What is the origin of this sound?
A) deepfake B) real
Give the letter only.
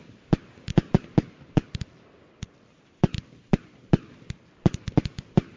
B